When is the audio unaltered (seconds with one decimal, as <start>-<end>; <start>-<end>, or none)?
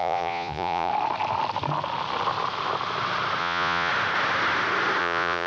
0.9-3.4; 3.9-5.0